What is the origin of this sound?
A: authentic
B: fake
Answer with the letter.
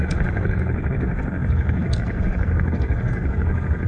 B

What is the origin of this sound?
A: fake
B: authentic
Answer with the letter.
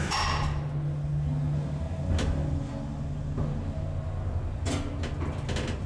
B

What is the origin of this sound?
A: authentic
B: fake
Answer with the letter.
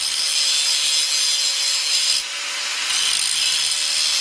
A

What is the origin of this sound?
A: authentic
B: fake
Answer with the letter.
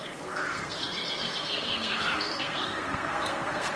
B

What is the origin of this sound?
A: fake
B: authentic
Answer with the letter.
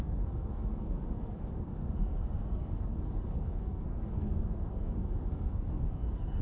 A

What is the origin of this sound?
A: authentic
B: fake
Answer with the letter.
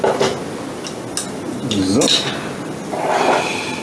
A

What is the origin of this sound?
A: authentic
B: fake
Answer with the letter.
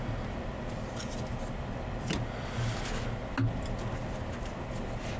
A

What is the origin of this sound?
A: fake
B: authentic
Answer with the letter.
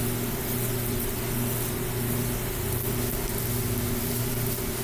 B